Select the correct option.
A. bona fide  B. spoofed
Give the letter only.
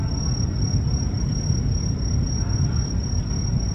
A